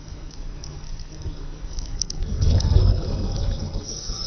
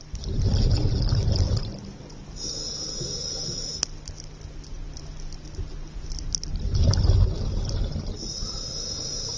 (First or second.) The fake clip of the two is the first